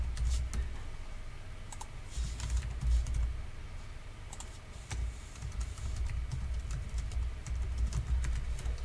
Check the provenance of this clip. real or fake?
real